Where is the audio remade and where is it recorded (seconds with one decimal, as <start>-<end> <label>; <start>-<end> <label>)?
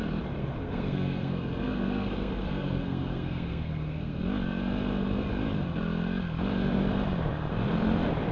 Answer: 0.0-0.4 recorded; 0.4-4.2 remade; 4.2-8.3 recorded